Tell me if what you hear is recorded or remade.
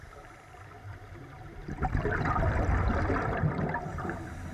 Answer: remade